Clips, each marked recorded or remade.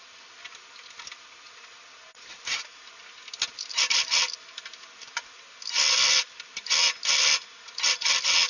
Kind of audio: recorded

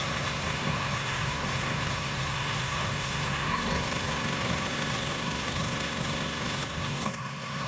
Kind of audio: remade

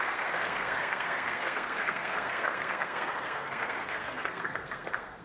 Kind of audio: remade